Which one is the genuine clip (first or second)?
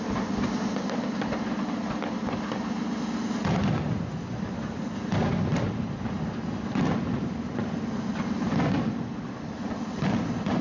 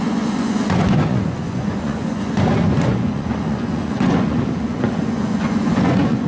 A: first